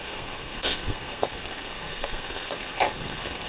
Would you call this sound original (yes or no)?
no